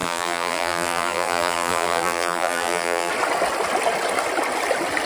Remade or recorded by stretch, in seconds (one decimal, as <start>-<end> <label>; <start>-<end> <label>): 0.0-3.1 remade; 3.1-5.1 recorded